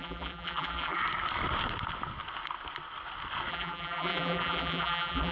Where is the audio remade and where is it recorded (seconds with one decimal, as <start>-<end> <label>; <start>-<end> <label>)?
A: 0.0-1.0 remade; 1.0-3.5 recorded; 3.5-5.3 remade

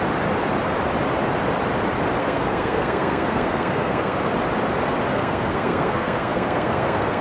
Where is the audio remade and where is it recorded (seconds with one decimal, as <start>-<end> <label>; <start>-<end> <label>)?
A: 0.0-2.2 recorded; 2.2-4.3 remade; 4.3-5.1 recorded; 5.1-7.2 remade

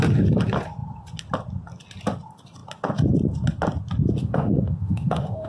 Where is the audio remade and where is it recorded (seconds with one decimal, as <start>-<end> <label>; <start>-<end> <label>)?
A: 0.0-4.2 recorded; 4.2-5.5 remade

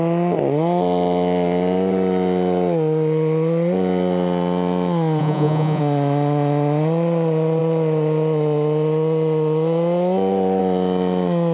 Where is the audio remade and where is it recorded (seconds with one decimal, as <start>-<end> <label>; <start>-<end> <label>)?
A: 0.0-5.2 recorded; 5.2-5.8 remade; 5.8-11.5 recorded

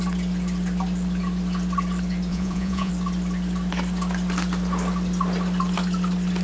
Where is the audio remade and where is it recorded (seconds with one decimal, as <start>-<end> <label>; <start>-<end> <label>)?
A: 0.0-2.3 recorded; 2.3-2.9 remade; 2.9-6.4 recorded

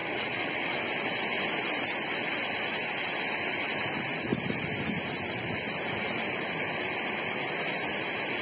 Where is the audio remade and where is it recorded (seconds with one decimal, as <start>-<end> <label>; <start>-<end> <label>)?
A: 0.0-0.8 remade; 0.8-8.4 recorded

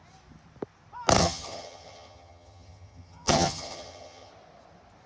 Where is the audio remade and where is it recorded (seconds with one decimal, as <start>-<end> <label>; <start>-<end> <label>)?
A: 0.0-1.2 recorded; 1.2-4.3 remade; 4.3-5.1 recorded